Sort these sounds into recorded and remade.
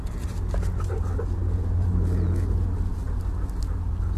recorded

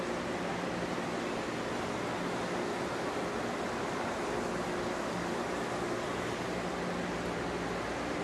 recorded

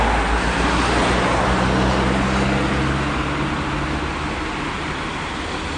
recorded